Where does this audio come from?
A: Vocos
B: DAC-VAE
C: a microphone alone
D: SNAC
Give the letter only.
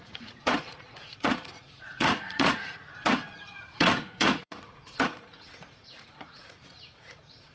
A